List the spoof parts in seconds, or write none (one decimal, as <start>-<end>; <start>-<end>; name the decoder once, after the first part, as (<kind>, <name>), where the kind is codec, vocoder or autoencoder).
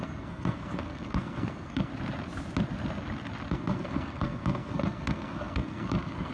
0.0-1.9 (codec, SNAC); 3.5-6.3